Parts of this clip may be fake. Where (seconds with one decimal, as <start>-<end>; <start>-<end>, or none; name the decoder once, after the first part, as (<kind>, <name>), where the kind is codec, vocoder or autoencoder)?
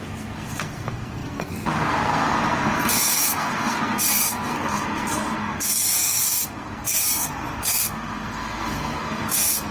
0.0-9.7 (codec, SNAC)